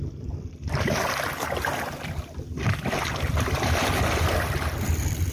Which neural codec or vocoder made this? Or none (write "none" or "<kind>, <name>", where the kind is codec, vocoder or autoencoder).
none